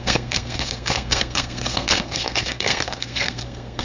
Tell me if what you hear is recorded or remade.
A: remade